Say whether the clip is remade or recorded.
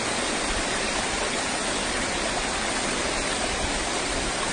recorded